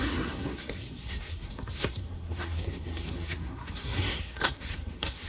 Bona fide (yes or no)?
no